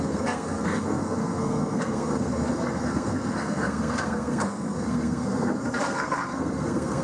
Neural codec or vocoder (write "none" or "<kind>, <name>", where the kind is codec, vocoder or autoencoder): codec, SNAC